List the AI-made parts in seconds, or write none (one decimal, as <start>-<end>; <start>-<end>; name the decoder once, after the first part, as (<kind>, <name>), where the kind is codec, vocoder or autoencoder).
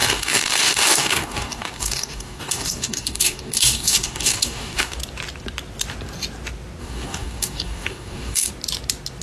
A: 0.0-5.0 (codec, DAC); 6.8-8.5